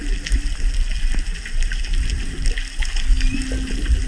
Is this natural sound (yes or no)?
yes